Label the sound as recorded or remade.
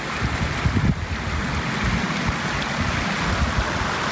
recorded